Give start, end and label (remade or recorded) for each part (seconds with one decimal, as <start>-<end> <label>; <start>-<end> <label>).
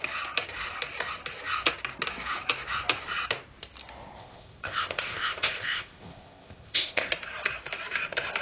0.0-4.2 recorded; 4.2-7.1 remade; 7.1-8.4 recorded